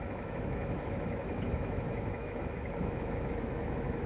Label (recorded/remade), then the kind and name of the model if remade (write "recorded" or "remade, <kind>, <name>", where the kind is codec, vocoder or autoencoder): remade, autoencoder, DAC-VAE